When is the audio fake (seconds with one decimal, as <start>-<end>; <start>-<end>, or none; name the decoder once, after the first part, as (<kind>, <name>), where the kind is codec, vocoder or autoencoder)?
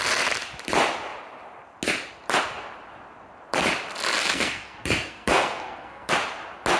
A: 4.2-6.1 (codec, SNAC)